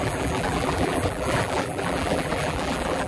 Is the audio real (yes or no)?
no